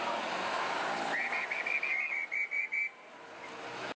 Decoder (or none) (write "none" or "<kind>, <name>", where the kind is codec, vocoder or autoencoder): none